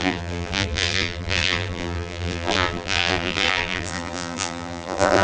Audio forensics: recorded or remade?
remade